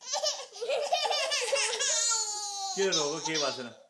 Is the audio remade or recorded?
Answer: recorded